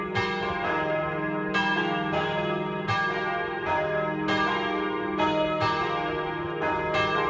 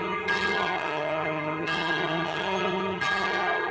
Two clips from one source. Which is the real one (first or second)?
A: first